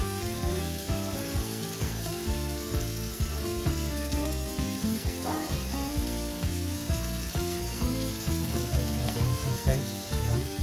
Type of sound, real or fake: fake